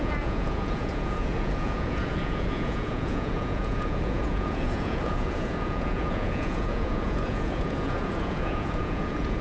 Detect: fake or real fake